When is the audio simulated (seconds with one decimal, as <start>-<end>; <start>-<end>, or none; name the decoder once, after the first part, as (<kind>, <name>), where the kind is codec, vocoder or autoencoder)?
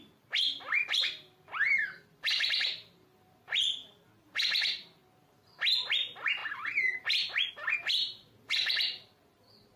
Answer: 0.0-5.0 (vocoder, BigVGAN v2); 5.9-9.8